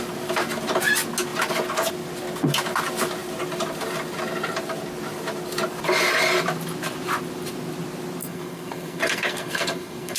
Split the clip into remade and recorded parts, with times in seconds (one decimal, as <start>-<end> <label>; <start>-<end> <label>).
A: 0.0-8.2 recorded; 8.2-10.2 remade